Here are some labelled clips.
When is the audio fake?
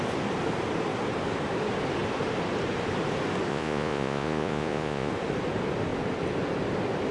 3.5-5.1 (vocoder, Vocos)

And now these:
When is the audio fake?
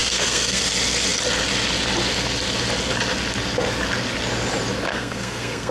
0.0-0.6 (codec, SNAC); 4.9-5.7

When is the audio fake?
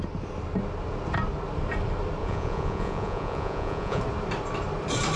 2.2-4.0 (vocoder, Vocos)